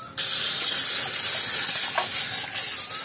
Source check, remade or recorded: recorded